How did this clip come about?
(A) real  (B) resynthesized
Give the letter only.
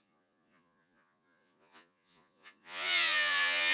B